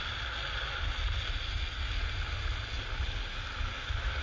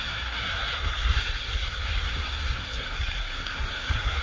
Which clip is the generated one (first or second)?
second